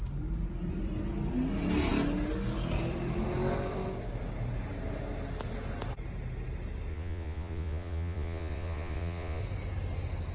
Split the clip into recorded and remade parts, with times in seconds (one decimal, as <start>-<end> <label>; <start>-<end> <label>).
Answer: 0.0-6.9 recorded; 6.9-9.4 remade; 9.4-10.3 recorded